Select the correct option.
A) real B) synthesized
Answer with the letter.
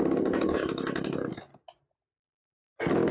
A